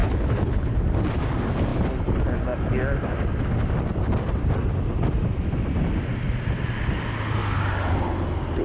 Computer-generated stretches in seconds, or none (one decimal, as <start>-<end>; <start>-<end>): 0.0-0.8